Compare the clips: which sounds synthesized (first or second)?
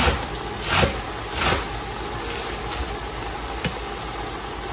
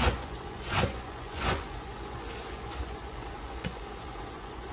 second